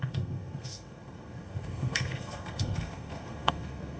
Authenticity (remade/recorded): remade